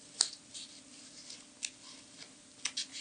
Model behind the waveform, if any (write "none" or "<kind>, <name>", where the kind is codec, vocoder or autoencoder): none